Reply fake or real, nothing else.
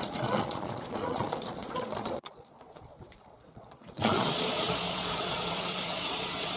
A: fake